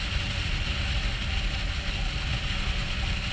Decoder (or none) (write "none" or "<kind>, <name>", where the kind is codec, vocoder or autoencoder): none